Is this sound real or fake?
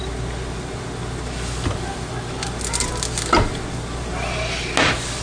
real